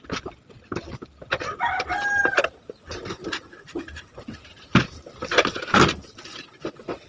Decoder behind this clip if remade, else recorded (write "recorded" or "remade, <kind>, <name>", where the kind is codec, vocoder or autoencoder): recorded